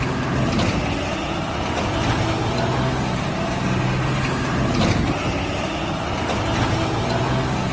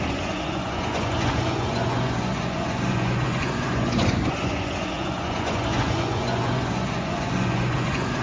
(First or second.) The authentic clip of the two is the first